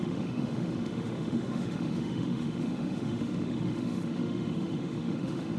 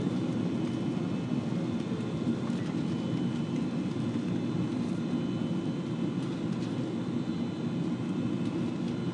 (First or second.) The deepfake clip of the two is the first